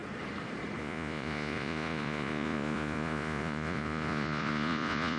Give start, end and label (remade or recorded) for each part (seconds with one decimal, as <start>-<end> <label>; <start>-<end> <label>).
0.0-0.8 recorded; 0.8-5.2 remade